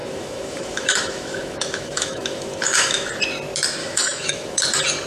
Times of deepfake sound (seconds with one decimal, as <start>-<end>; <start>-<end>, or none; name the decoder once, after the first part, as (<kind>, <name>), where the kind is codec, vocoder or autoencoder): 0.0-3.1 (autoencoder, DAC-VAE); 3.8-4.6